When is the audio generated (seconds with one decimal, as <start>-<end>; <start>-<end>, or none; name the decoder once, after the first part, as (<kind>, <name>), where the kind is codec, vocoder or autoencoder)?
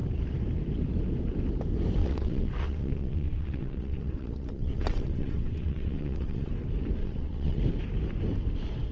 2.0-6.5 (vocoder, WaveNeXt); 7.0-7.6